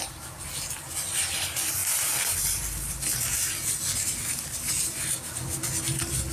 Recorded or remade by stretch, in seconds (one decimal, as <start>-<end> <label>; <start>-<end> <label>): 0.0-6.3 recorded